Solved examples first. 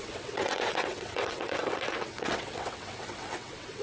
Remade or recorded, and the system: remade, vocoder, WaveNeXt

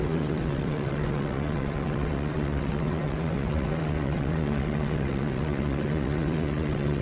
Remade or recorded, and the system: remade, vocoder, WaveNeXt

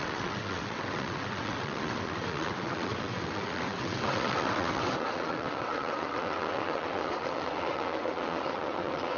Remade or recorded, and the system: remade, vocoder, WaveNeXt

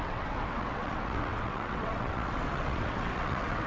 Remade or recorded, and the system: remade, vocoder, WaveNeXt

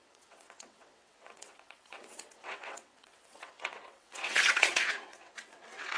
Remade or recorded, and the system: remade, vocoder, WaveNeXt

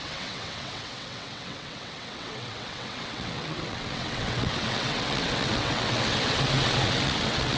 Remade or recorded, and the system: remade, vocoder, WaveNeXt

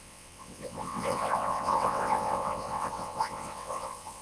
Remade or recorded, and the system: remade, vocoder, WaveNeXt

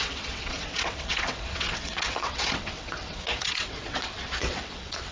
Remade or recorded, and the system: remade, vocoder, WaveNeXt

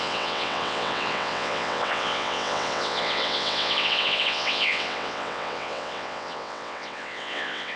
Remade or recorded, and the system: remade, vocoder, WaveNeXt